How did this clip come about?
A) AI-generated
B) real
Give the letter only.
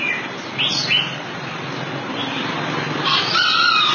A